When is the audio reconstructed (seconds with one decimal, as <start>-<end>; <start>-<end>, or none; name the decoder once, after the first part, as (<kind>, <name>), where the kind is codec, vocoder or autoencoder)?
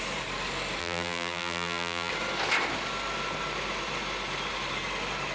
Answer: 0.8-2.1 (vocoder, BigVGAN v2)